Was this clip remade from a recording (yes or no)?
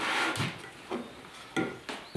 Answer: no